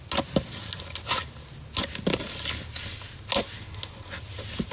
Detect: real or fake real